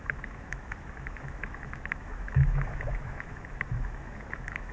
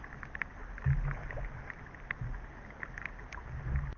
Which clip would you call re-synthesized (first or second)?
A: first